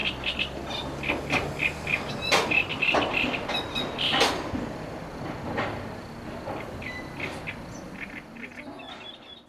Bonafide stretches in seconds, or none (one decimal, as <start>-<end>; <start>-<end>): 0.0-9.5